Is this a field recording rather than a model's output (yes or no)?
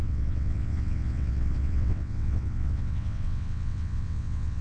no